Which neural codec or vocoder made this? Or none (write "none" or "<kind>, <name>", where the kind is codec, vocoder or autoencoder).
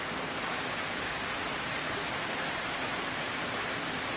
none